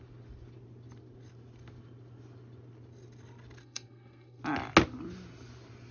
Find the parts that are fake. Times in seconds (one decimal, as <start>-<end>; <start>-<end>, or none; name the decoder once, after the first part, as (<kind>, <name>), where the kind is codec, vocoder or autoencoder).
3.6-4.4 (codec, SNAC)